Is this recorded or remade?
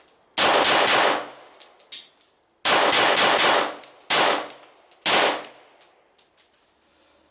recorded